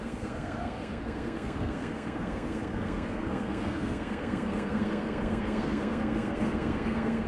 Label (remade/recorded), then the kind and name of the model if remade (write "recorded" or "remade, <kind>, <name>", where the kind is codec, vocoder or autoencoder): remade, codec, SNAC